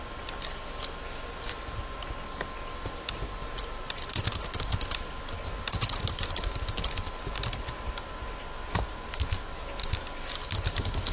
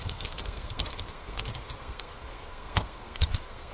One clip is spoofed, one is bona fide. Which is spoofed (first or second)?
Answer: second